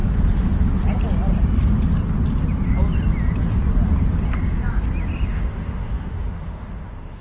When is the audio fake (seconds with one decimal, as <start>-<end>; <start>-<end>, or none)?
5.3-7.2